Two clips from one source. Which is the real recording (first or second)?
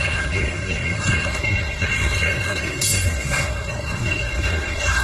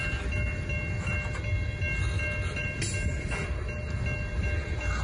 second